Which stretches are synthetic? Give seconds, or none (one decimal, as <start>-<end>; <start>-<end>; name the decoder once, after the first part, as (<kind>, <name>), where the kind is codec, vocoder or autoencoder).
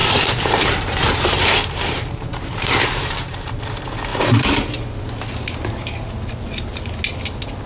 0.0-3.6 (vocoder, BigVGAN v2)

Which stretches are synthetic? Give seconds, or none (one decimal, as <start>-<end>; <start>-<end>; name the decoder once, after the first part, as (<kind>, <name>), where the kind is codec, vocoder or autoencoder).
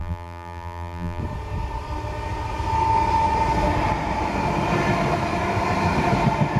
0.0-1.2 (vocoder, BigVGAN v2)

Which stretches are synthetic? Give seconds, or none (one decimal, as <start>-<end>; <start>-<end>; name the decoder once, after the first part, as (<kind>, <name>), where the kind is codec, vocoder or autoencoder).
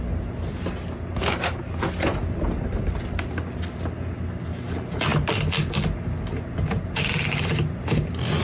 none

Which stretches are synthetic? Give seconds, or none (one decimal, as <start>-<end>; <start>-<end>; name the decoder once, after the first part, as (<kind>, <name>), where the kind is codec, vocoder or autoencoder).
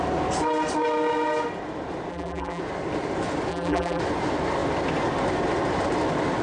2.1-2.6 (vocoder, BigVGAN v2); 3.5-4.0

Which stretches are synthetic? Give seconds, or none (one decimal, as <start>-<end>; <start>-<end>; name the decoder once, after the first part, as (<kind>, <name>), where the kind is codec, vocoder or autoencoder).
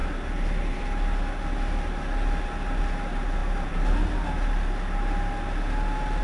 none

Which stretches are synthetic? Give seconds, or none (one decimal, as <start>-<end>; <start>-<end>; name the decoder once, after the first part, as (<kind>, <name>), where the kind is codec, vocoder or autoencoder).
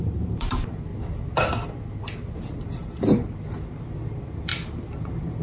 0.0-0.9 (vocoder, BigVGAN v2); 4.1-4.5